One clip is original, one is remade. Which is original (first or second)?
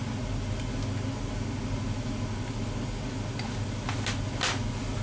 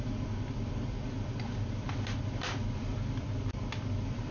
first